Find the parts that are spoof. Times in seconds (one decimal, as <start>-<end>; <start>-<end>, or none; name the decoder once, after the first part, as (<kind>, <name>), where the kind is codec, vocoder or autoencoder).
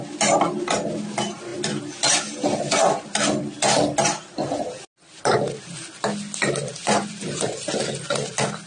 6.8-7.6 (vocoder, Vocos)